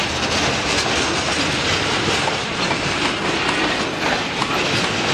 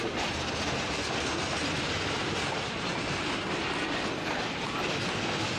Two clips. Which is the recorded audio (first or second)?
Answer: first